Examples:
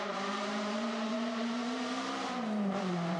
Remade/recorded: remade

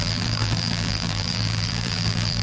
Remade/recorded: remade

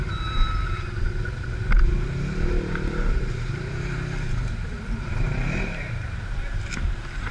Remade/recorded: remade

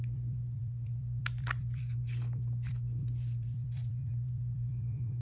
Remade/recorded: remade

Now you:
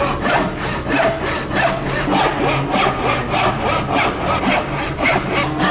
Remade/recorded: recorded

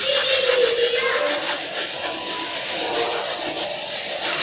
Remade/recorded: recorded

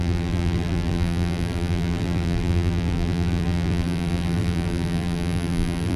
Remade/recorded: remade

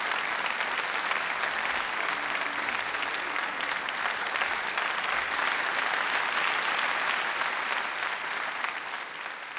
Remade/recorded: recorded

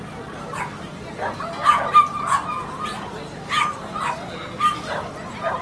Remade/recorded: recorded